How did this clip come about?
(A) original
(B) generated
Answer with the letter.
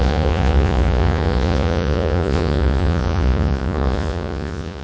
B